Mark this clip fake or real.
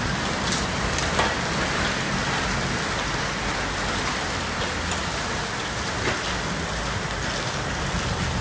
real